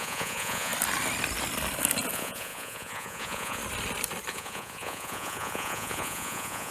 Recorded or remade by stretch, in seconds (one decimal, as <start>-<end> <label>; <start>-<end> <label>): 0.0-0.7 remade; 0.7-2.1 recorded; 2.1-3.6 remade; 3.6-4.3 recorded; 4.3-6.7 remade